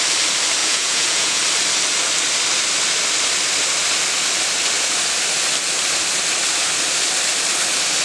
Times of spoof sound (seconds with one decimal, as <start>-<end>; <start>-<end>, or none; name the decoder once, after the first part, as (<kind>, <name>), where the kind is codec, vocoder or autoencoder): 0.6-1.4 (vocoder, Vocos)